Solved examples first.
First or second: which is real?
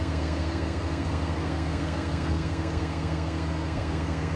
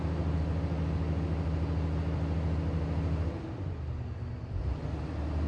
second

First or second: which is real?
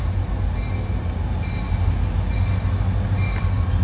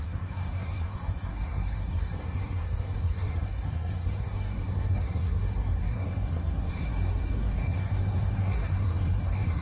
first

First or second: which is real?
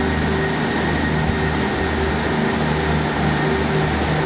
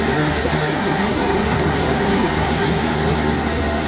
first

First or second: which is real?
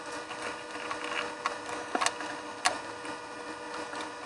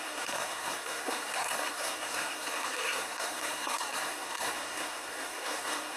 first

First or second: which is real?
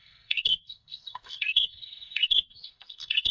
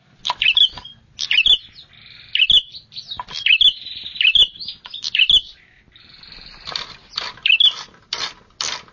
second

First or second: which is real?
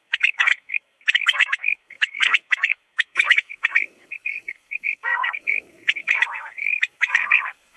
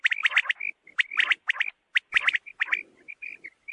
second